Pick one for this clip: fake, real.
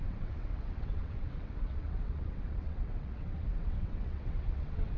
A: fake